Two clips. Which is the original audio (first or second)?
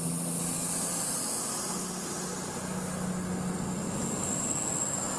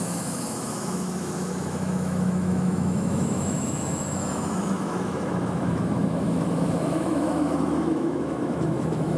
first